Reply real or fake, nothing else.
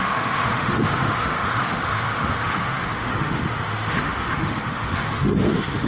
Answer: fake